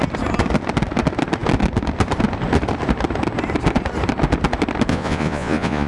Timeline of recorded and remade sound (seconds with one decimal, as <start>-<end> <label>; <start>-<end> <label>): 0.0-4.9 recorded; 4.9-5.9 remade